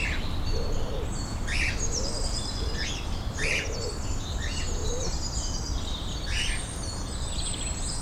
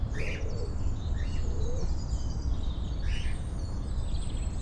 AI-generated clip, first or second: first